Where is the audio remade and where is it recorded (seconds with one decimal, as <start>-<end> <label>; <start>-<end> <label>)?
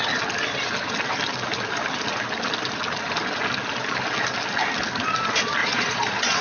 0.0-5.6 recorded; 5.6-6.4 remade